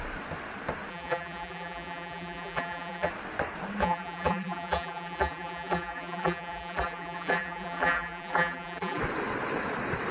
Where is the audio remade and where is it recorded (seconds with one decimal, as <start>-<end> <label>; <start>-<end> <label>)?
0.0-0.9 recorded; 0.9-3.1 remade; 3.1-3.8 recorded; 3.8-9.0 remade; 9.0-10.1 recorded